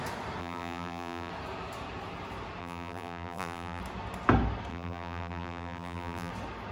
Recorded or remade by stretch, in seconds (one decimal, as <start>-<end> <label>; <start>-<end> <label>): 0.0-0.4 recorded; 0.4-1.3 remade; 1.3-2.6 recorded; 2.6-3.8 remade; 3.8-4.7 recorded; 4.7-6.3 remade; 6.3-6.7 recorded